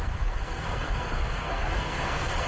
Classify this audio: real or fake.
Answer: fake